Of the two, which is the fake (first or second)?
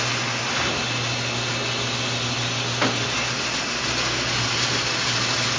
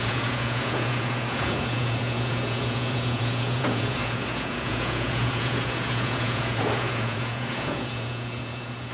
second